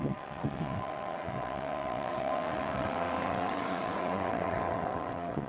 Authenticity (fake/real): fake